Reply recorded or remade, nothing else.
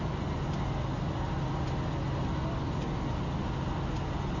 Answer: recorded